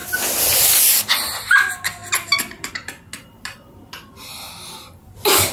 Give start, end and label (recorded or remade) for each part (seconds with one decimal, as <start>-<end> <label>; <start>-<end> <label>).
0.0-5.5 recorded